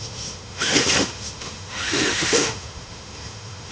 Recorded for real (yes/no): no